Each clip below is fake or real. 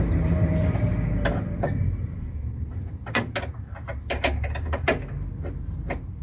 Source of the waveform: real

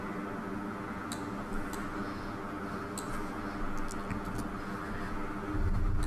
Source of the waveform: real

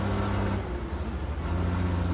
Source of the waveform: real